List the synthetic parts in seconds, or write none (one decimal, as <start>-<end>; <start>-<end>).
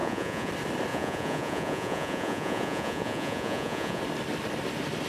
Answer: 0.0-0.5; 0.9-4.0